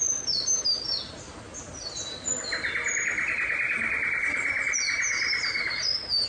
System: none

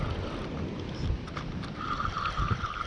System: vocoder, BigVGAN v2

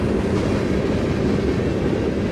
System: none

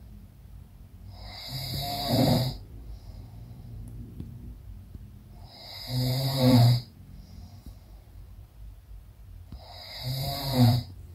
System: vocoder, BigVGAN v2